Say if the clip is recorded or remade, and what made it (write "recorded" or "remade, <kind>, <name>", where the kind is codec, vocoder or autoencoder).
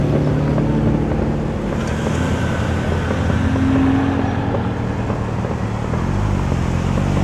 recorded